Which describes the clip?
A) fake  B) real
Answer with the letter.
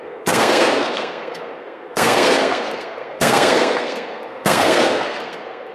A